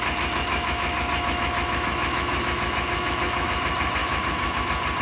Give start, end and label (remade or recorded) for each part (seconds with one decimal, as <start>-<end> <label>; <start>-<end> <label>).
0.0-0.5 recorded; 0.5-3.5 remade; 3.5-4.0 recorded; 4.0-4.6 remade; 4.6-5.0 recorded